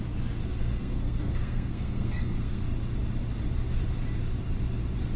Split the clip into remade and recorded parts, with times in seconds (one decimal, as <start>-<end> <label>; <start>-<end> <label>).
0.0-0.5 recorded; 0.5-2.6 remade; 2.6-5.2 recorded